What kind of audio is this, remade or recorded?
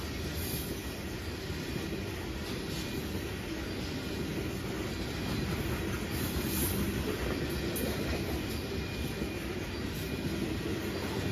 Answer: recorded